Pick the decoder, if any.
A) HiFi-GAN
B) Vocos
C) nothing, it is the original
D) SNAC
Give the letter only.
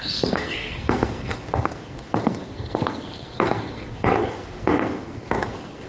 D